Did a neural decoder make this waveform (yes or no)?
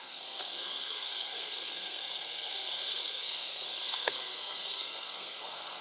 yes